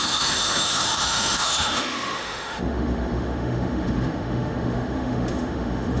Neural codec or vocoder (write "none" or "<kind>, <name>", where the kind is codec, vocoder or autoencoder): autoencoder, DAC-VAE